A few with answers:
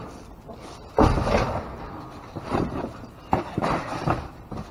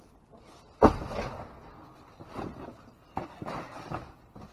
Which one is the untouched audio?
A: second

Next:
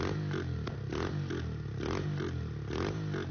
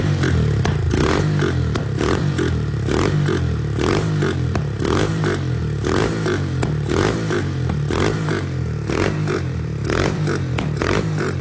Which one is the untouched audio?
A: first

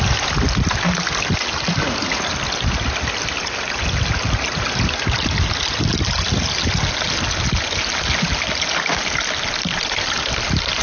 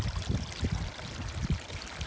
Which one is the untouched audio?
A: first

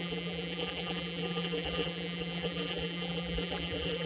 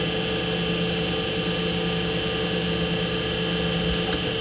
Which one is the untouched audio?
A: second